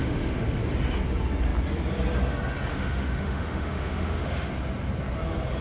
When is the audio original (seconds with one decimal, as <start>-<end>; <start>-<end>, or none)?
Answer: 0.6-2.7; 4.5-5.6